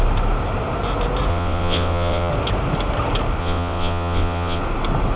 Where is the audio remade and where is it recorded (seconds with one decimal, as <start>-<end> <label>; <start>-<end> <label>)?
0.0-1.3 recorded; 1.3-2.3 remade; 2.3-3.4 recorded; 3.4-4.6 remade; 4.6-5.2 recorded